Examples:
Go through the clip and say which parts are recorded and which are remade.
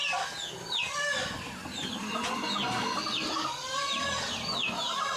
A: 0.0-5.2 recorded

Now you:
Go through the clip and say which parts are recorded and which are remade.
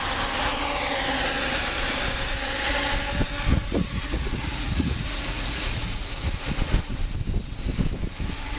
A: 0.0-3.5 recorded; 3.5-6.5 remade; 6.5-8.6 recorded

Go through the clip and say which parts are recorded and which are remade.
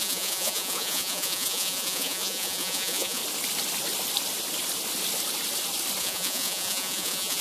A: 0.0-3.2 remade; 3.2-6.0 recorded; 6.0-7.4 remade